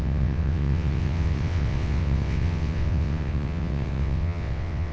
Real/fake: fake